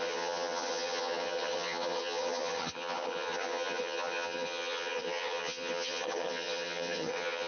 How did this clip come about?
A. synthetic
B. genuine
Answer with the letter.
A